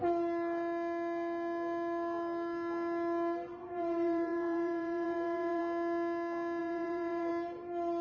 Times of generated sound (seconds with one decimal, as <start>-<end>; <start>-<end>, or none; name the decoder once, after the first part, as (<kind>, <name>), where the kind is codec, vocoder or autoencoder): 3.6-5.6 (vocoder, Vocos); 6.6-7.3

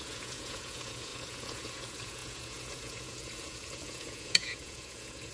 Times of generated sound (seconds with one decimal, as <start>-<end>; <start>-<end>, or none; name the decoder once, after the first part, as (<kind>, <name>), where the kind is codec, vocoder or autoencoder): 0.0-5.3 (vocoder, Vocos)

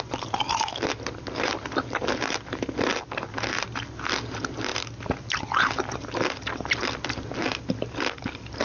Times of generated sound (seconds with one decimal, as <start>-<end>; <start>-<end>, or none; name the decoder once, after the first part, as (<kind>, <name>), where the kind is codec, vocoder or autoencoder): none

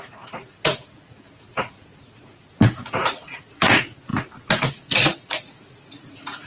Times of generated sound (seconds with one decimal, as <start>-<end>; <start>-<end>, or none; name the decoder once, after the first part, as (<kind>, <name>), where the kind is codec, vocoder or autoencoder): 0.0-4.1 (vocoder, Vocos); 4.7-6.5

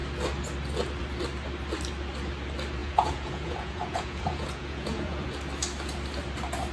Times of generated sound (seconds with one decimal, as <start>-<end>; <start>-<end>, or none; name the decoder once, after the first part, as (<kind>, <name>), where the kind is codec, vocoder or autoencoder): 2.8-5.3 (vocoder, Vocos)

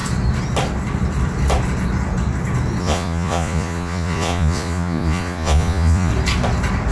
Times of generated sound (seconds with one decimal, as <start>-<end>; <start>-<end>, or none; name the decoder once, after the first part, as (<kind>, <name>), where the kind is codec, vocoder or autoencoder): 2.8-6.1 (vocoder, Vocos)

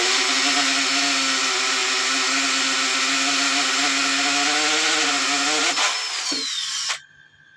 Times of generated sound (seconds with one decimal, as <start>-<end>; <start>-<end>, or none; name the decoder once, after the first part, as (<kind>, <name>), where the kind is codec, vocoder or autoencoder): none